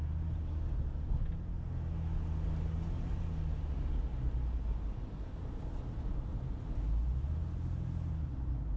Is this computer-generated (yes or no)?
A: no